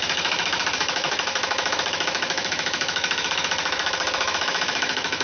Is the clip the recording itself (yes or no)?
no